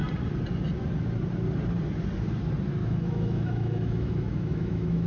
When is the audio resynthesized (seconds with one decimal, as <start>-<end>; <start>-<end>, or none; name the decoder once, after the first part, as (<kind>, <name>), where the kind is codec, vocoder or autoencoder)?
2.8-5.1 (autoencoder, DAC-VAE)